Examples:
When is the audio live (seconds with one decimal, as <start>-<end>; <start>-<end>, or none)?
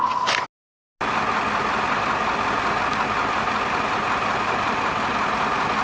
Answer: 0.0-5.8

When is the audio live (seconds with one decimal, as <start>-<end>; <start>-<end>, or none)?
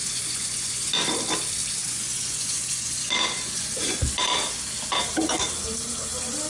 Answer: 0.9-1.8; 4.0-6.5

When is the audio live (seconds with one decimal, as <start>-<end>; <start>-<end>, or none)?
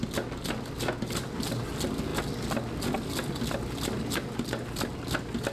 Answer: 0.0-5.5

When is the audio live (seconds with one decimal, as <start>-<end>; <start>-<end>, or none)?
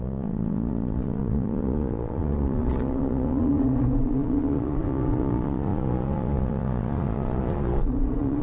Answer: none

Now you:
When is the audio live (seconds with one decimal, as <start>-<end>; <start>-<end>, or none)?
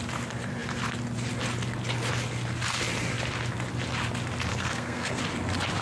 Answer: 0.0-4.5; 5.2-5.8